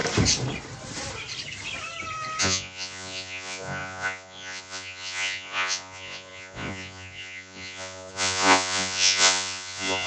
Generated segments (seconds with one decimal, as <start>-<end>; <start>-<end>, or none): 2.4-10.1

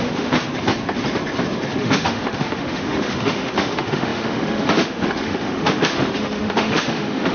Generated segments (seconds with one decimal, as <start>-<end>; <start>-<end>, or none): 0.0-0.5; 1.8-7.3